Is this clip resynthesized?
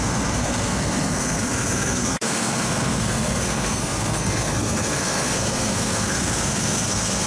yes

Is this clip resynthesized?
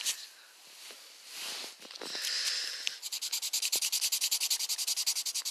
no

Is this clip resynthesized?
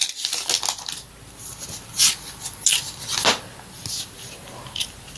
no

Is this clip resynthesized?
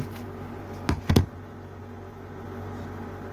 no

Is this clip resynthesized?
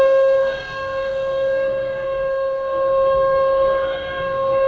yes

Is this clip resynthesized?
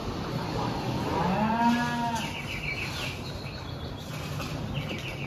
no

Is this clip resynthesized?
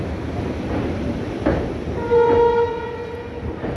no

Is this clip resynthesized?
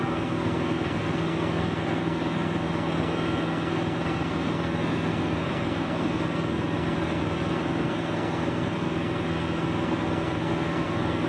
yes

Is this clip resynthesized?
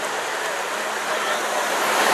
no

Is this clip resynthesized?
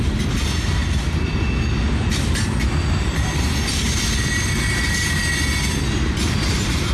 no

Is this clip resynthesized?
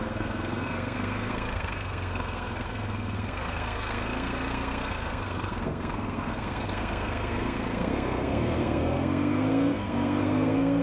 yes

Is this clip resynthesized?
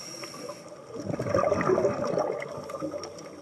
no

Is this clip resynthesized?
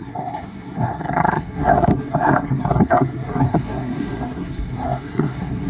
yes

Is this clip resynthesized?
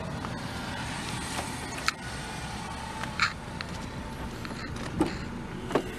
no